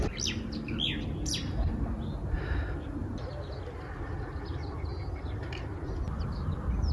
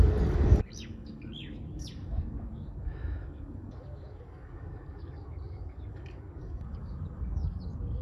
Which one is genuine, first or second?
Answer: first